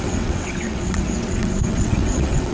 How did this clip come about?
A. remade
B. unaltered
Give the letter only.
A